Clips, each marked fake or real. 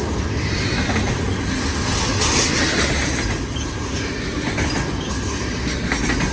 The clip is real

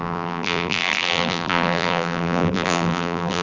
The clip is fake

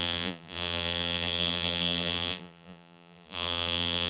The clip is fake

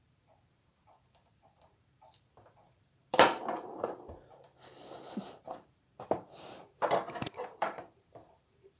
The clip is fake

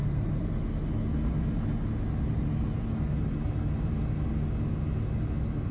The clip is real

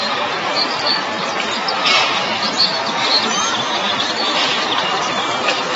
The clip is real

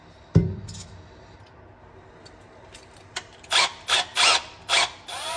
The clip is real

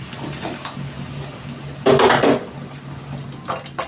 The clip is real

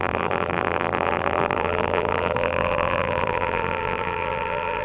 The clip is fake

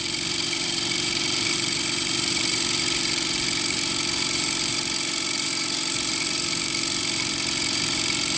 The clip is fake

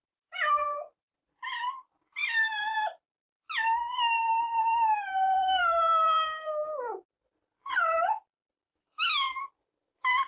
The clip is fake